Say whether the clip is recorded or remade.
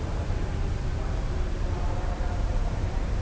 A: remade